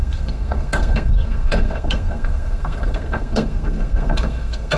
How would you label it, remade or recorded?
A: remade